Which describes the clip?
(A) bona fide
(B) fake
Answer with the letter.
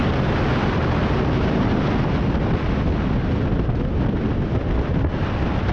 A